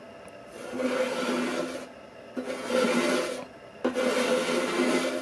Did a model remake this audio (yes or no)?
no